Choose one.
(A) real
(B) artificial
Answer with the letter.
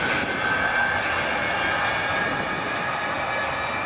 A